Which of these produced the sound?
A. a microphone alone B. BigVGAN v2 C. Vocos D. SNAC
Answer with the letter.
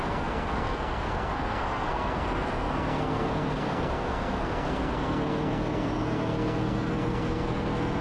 D